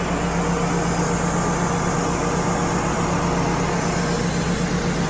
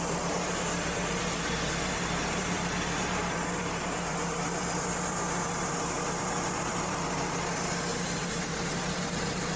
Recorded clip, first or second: first